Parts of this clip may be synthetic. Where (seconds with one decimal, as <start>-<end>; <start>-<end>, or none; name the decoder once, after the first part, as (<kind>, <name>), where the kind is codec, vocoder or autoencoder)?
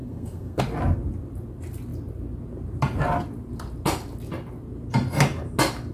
0.0-0.6 (codec, SNAC)